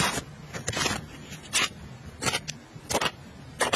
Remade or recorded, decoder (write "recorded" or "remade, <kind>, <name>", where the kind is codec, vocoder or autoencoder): recorded